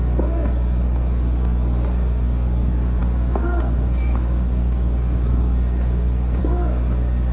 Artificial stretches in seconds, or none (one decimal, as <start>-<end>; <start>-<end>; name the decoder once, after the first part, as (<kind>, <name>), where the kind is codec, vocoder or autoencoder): 0.0-7.3 (codec, SNAC)